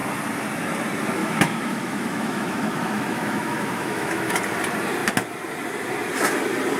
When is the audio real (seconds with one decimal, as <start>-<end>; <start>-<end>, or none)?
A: 0.0-1.2; 4.4-6.8